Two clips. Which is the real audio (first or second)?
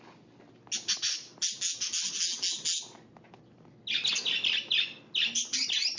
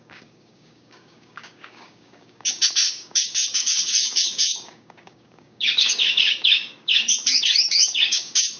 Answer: first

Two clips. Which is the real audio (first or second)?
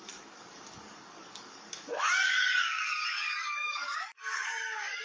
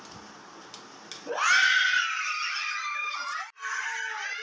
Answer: second